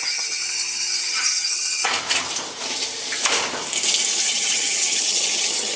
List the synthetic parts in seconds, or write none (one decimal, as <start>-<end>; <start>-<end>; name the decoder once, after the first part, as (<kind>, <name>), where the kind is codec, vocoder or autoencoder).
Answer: 0.0-0.4 (vocoder, HiFi-GAN); 1.0-1.8; 4.2-5.8